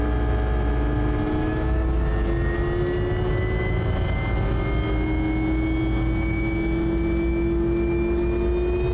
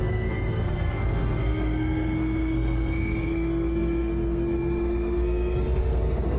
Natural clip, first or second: first